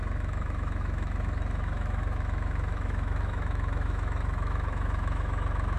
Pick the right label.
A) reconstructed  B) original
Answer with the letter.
A